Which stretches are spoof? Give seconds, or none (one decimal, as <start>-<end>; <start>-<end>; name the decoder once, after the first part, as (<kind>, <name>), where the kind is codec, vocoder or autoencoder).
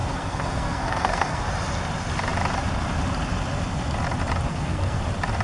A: 0.0-1.4 (codec, SNAC); 4.5-5.0